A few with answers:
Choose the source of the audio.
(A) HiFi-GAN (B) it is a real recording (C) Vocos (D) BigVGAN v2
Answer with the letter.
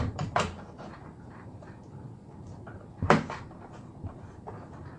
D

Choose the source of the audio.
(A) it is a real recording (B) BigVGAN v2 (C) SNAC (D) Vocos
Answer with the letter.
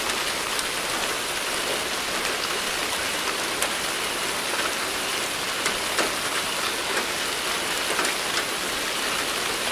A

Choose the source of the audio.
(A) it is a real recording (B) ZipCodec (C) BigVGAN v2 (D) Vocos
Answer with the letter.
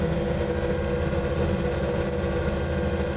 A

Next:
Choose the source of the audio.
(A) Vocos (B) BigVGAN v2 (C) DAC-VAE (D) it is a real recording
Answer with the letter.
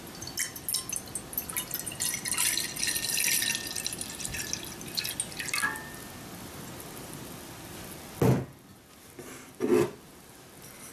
D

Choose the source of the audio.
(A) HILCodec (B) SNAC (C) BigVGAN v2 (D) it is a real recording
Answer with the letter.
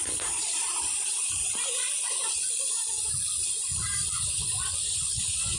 C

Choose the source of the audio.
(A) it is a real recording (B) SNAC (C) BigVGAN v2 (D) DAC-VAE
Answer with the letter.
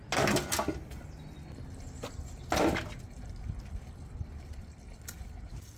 A